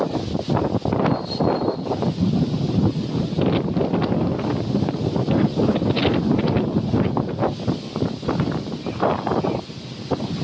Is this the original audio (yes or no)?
yes